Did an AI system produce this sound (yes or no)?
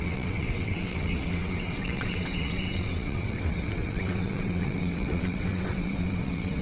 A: yes